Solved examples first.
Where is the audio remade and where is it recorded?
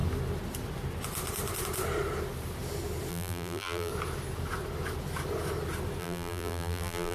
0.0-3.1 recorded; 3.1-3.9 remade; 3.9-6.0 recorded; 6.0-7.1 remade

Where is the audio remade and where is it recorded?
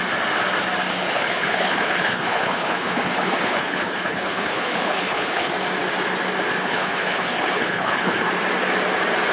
0.0-0.9 recorded; 0.9-5.5 remade; 5.5-6.6 recorded; 6.6-8.3 remade; 8.3-9.3 recorded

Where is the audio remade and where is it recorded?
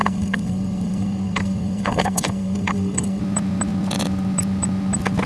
0.0-3.2 remade; 3.2-5.3 recorded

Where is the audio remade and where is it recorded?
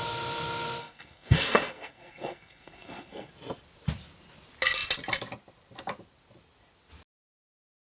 0.0-0.8 recorded; 0.8-3.3 remade; 3.3-7.9 recorded